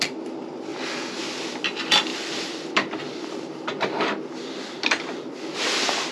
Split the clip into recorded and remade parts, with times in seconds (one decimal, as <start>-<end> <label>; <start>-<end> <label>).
0.0-2.1 recorded; 2.1-5.3 remade; 5.3-6.1 recorded